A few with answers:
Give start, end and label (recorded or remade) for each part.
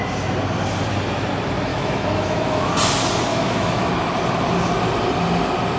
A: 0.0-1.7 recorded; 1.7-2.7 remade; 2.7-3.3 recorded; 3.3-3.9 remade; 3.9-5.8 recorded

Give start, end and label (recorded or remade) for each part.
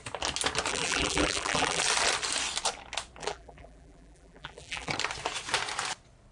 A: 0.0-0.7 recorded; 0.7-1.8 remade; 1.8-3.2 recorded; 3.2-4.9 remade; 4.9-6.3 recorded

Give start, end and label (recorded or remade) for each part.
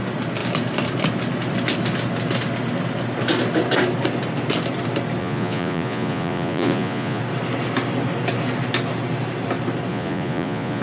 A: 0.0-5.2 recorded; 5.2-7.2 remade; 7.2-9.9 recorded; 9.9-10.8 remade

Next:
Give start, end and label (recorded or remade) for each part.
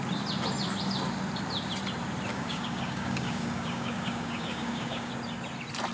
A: 0.0-2.3 recorded; 2.3-5.1 remade; 5.1-5.9 recorded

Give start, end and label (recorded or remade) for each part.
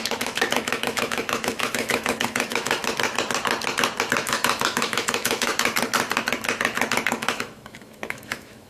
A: 0.0-2.8 remade; 2.8-4.2 recorded; 4.2-5.5 remade; 5.5-7.1 recorded; 7.1-8.7 remade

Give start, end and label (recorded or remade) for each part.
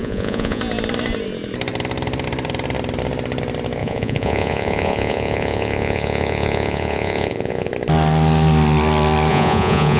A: 0.0-0.6 remade; 0.6-3.8 recorded; 3.8-7.7 remade; 7.7-9.3 recorded; 9.3-10.0 remade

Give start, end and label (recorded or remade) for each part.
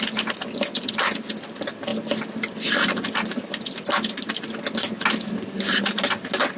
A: 0.0-6.6 recorded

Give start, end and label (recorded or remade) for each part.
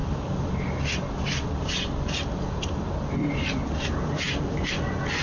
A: 0.0-5.2 recorded